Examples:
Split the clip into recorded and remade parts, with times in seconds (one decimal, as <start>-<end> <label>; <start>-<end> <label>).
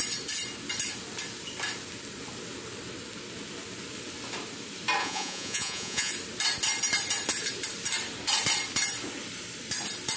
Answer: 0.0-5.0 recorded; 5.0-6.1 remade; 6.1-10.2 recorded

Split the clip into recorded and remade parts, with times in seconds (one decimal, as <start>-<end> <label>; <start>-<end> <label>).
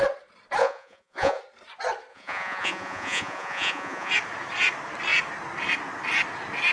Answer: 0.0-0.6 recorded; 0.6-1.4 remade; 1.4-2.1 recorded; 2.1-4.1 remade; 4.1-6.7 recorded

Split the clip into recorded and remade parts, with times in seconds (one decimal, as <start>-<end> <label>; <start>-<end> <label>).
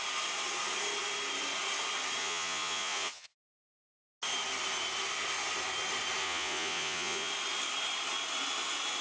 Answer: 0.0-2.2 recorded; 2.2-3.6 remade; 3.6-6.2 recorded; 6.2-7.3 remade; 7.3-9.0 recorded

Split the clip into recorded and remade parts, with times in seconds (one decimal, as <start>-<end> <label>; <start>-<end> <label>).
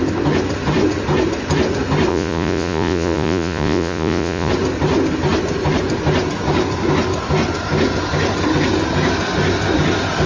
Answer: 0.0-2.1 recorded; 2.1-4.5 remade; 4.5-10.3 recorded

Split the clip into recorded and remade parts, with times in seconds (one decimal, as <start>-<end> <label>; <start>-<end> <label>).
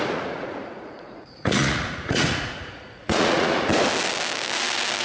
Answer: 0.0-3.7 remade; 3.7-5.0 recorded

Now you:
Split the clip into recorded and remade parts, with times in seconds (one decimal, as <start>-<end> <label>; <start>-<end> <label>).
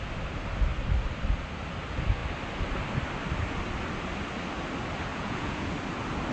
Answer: 0.0-5.1 recorded; 5.1-5.7 remade; 5.7-6.3 recorded